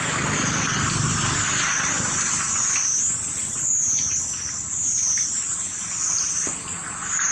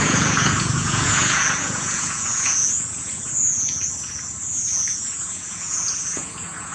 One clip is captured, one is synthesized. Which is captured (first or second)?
first